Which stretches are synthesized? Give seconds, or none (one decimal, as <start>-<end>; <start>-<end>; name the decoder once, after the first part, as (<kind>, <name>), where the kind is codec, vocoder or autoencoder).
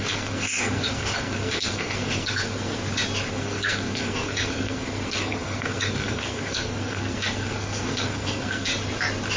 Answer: 0.0-2.8 (codec, SNAC); 3.3-8.7